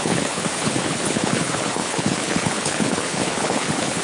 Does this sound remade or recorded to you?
remade